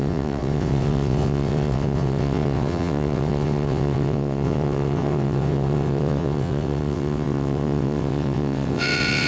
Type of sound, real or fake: fake